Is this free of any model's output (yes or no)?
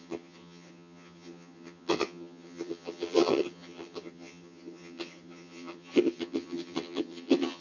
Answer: no